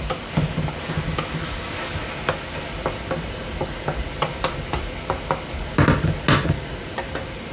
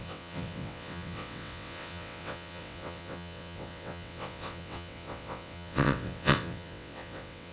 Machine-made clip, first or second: second